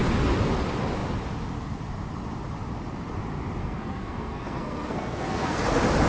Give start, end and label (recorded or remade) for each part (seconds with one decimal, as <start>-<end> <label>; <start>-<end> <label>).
0.0-3.6 recorded; 3.6-5.6 remade; 5.6-6.1 recorded